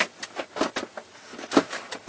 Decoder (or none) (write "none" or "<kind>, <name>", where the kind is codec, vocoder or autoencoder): none